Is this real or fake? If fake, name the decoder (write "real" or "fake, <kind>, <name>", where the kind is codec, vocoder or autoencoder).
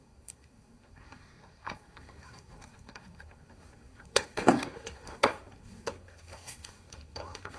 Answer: fake, codec, SNAC